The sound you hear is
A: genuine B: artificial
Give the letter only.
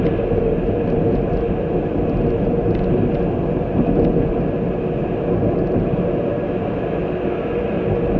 A